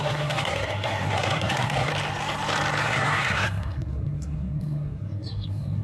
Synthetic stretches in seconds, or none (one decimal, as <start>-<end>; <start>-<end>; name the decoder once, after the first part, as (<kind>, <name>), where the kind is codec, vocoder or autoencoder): 0.0-1.9 (codec, SNAC); 2.8-5.8